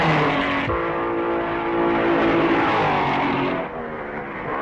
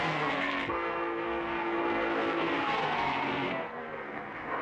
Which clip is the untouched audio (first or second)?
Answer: first